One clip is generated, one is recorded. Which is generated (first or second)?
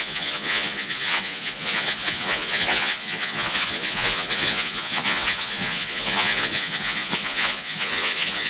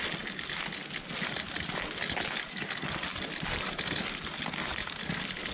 first